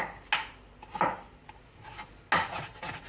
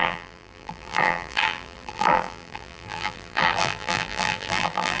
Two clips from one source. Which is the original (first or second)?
first